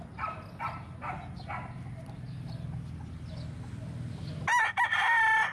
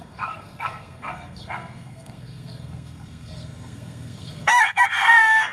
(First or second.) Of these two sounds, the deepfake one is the second